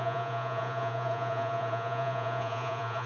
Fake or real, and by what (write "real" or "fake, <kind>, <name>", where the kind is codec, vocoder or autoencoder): fake, vocoder, Vocos